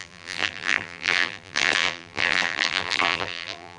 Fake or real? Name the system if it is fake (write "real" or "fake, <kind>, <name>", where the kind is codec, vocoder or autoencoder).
fake, vocoder, BigVGAN v2